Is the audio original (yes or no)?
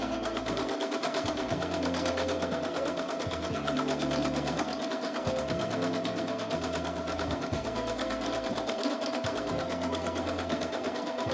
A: no